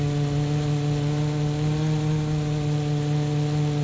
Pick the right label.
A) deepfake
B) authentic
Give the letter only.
B